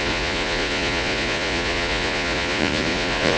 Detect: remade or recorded remade